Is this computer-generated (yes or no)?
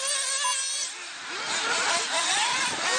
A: no